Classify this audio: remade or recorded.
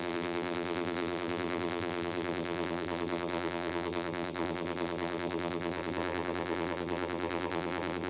remade